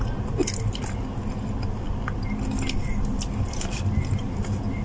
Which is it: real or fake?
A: real